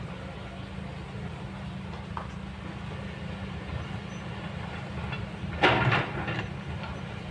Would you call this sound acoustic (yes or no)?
yes